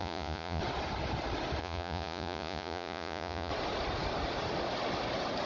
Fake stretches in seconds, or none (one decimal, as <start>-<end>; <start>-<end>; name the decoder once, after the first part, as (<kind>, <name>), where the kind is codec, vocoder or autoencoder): 0.0-0.6 (vocoder, Vocos); 1.6-3.5